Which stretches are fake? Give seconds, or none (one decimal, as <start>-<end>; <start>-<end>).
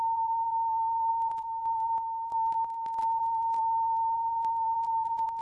0.0-5.4